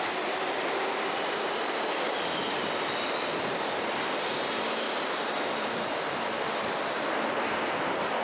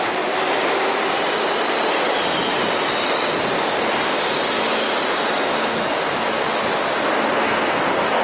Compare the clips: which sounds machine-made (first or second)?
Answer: first